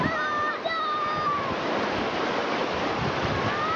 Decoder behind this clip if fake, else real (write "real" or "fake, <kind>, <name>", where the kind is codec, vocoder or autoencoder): real